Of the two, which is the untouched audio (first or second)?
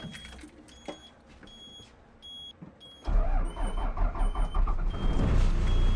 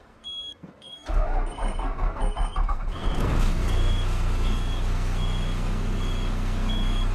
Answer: first